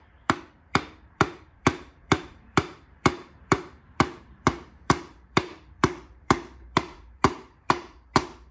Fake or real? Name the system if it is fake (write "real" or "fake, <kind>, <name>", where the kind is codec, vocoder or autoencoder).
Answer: fake, vocoder, BigVGAN v2